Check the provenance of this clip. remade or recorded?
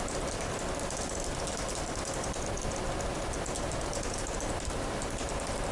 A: recorded